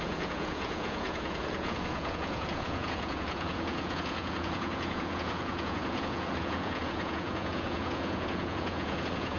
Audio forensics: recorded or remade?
remade